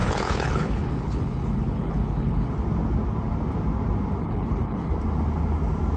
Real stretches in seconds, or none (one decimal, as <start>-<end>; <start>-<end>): 2.5-4.2; 4.9-6.0